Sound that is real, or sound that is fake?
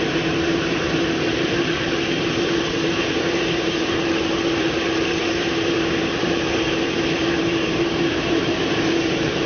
fake